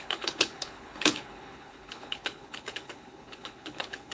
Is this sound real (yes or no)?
no